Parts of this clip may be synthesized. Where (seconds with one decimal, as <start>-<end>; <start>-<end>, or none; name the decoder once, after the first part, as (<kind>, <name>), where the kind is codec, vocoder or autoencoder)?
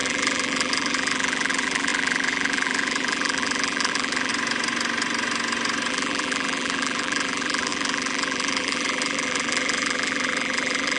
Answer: 0.0-4.3 (vocoder, BigVGAN v2); 5.9-11.0